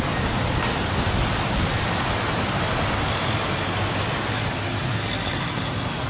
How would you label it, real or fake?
real